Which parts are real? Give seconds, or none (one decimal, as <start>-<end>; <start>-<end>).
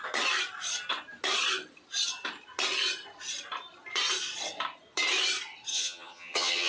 0.0-5.7